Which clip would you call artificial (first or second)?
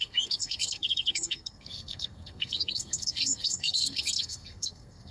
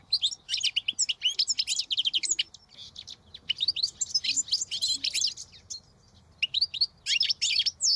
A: first